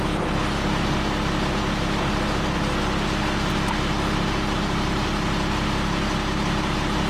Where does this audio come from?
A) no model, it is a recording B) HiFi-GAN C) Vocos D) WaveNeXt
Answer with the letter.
A